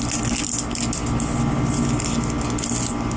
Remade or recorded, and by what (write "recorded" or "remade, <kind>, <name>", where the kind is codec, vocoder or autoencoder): recorded